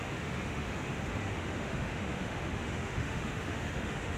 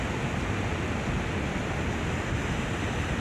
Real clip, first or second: second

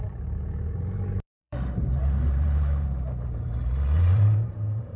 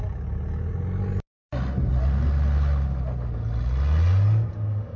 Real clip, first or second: second